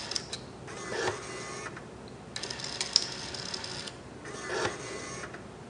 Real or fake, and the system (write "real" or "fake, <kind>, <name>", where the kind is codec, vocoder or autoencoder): real